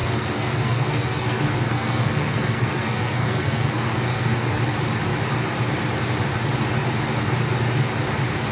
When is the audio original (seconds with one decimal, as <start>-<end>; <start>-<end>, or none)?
4.6-8.5